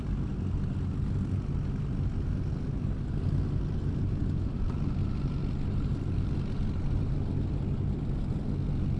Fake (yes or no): no